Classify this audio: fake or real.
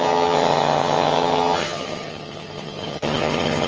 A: fake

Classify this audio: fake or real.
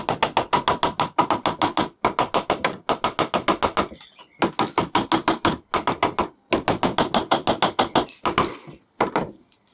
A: real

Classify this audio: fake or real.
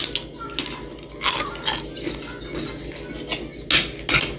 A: real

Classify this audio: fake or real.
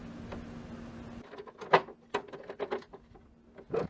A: real